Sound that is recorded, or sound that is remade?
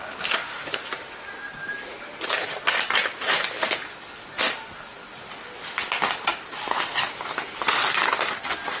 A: recorded